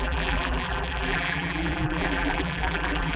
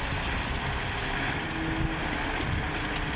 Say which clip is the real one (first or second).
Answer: second